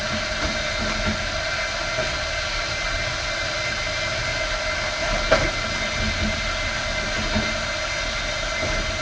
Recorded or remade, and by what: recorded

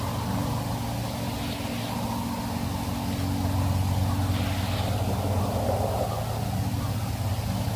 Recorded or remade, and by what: recorded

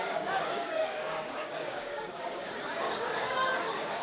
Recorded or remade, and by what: remade, codec, DAC